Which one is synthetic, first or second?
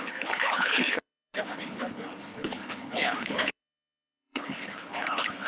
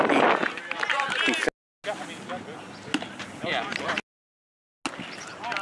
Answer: first